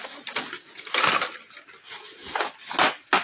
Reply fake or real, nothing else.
real